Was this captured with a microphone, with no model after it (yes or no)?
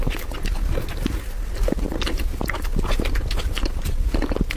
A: yes